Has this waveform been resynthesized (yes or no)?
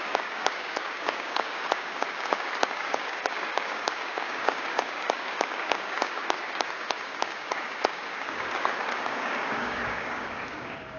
yes